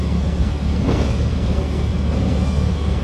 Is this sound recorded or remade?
remade